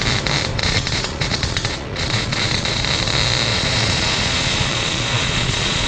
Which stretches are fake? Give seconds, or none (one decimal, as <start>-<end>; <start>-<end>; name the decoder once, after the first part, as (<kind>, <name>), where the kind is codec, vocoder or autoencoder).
0.6-2.8 (vocoder, Vocos); 3.5-5.9